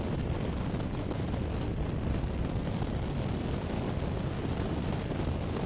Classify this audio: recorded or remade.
recorded